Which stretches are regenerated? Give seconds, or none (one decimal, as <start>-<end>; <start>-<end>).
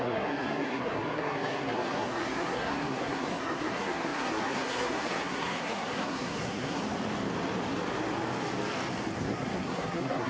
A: 0.0-6.8; 9.2-10.3